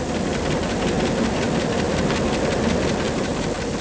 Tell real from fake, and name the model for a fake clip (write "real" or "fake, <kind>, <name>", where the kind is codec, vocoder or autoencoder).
real